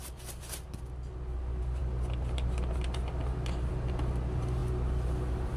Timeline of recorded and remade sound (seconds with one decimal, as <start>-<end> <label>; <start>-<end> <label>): 0.0-5.6 recorded